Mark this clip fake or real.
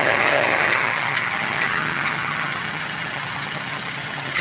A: fake